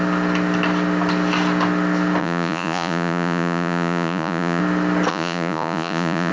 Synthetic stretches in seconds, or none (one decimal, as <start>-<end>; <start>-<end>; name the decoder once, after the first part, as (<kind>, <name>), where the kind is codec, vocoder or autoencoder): 2.2-4.6 (vocoder, Vocos); 5.1-6.3